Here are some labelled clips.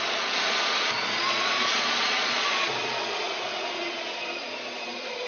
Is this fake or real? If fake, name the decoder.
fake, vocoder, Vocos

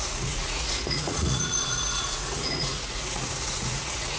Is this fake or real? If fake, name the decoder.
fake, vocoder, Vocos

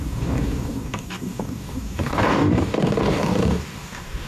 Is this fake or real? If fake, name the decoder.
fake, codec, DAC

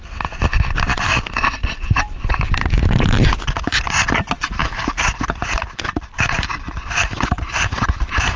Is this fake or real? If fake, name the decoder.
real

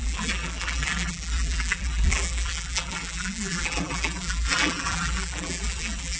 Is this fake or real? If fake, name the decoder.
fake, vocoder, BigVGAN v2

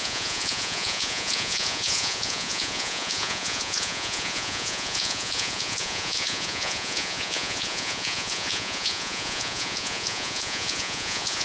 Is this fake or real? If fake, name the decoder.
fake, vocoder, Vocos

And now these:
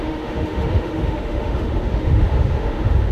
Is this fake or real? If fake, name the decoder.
fake, autoencoder, DAC-VAE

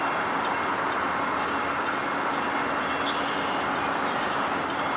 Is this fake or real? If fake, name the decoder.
real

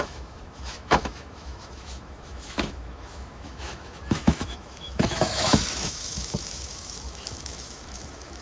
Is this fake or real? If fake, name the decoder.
fake, autoencoder, DAC-VAE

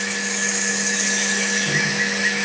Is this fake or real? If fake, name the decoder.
fake, autoencoder, DAC-VAE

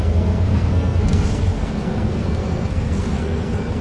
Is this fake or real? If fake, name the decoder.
fake, codec, SNAC